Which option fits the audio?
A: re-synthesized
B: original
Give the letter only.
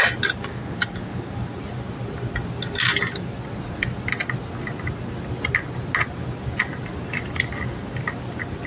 B